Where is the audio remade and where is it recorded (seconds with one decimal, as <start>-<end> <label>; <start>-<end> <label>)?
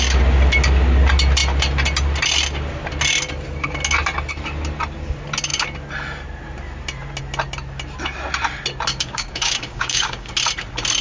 0.0-8.9 recorded; 8.9-10.3 remade; 10.3-11.0 recorded